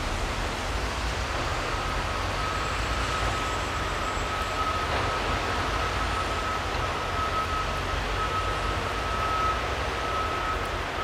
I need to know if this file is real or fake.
real